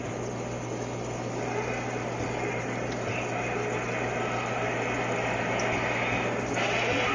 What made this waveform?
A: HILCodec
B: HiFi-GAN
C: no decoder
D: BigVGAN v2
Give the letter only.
C